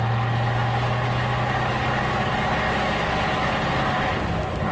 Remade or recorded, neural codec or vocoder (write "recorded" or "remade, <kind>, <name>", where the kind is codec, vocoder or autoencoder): recorded